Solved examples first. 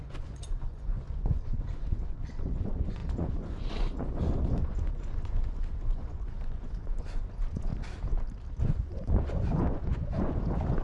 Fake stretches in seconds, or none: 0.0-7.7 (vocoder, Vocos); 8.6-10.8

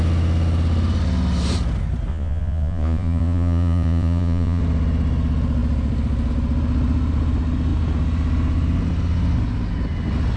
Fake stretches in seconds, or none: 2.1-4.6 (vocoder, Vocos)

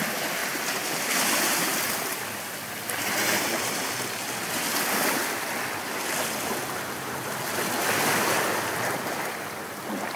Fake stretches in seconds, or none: none

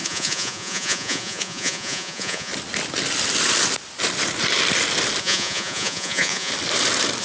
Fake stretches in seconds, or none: 0.0-2.5 (vocoder, Vocos); 5.2-6.5